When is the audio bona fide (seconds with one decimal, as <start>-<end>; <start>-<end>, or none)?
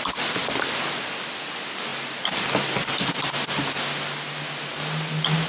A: 0.0-5.5